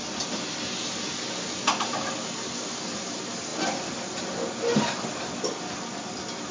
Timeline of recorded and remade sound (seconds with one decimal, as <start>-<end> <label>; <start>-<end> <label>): 0.0-6.5 recorded